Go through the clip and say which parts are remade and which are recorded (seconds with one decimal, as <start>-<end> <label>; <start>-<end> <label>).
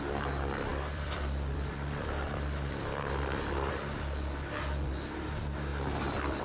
0.0-0.7 recorded; 0.7-3.7 remade; 3.7-5.7 recorded; 5.7-6.4 remade